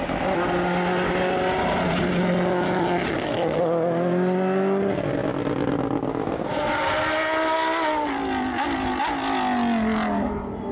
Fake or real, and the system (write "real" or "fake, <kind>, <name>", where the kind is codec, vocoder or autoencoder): real